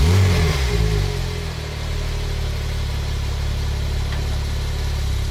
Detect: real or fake real